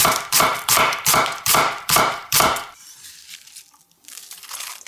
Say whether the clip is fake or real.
fake